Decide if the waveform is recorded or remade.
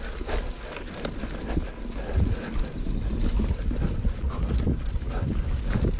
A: recorded